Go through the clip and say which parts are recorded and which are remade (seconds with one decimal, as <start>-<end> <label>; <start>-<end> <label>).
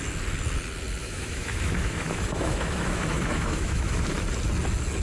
0.0-1.0 recorded; 1.0-4.0 remade; 4.0-5.0 recorded